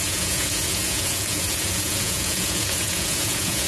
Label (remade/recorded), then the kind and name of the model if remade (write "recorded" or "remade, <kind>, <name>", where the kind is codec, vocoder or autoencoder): remade, vocoder, Vocos